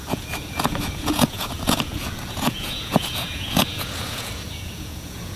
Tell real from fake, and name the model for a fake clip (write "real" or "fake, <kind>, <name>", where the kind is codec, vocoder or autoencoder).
fake, vocoder, Vocos